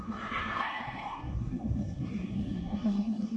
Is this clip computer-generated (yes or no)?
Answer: yes